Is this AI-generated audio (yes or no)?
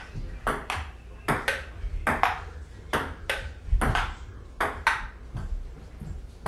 no